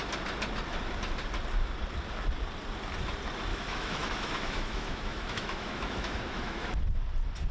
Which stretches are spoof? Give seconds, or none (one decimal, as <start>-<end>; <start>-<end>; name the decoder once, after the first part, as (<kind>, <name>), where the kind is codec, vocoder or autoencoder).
3.5-6.8 (autoencoder, DAC-VAE)